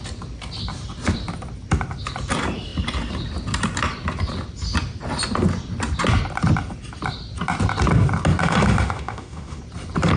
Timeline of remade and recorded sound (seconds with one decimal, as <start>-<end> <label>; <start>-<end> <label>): 0.0-8.4 recorded; 8.4-9.6 remade; 9.6-10.2 recorded